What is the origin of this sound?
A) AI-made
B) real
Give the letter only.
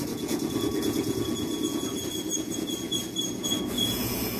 A